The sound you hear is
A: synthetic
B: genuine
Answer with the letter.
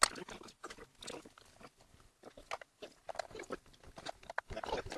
B